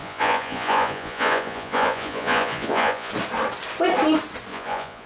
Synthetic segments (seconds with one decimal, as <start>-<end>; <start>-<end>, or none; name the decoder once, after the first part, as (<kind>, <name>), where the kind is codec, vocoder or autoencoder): 0.0-3.1 (vocoder, Vocos); 4.5-5.1

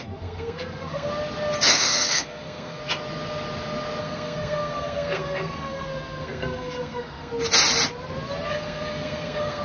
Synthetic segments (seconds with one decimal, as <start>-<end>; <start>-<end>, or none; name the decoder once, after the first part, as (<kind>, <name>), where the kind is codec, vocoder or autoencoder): 0.0-1.1 (codec, SNAC); 1.7-2.8; 4.0-7.3; 8.5-9.6

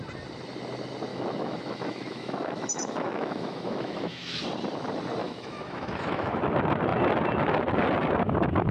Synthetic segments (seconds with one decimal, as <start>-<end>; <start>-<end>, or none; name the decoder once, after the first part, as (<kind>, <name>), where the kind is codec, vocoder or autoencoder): 1.1-4.4 (autoencoder, DAC-VAE); 5.2-6.4

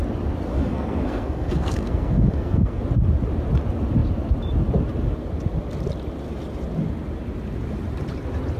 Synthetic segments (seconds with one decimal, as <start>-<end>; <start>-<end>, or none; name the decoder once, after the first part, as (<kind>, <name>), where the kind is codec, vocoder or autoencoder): 0.5-2.8 (codec, SNAC)